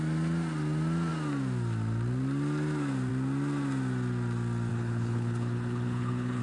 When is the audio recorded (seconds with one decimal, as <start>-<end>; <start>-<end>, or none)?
0.0-4.7